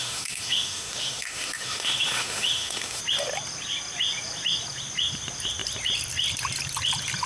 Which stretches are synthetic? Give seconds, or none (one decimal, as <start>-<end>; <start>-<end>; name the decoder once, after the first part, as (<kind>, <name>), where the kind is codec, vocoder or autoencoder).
0.0-3.0 (autoencoder, DAC-VAE)